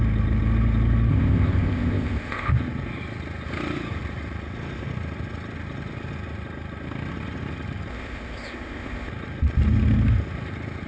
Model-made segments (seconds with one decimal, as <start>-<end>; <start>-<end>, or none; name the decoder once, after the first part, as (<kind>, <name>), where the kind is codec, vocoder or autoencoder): 1.1-2.5 (codec, ZipCodec); 7.9-9.1

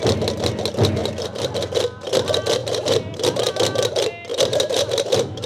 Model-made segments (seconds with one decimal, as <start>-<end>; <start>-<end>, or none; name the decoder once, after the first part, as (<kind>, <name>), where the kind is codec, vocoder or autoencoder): 2.6-3.2 (vocoder, BigVGAN v2); 4.3-5.5